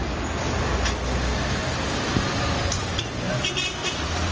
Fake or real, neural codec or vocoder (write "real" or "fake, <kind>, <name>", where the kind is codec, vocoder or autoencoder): real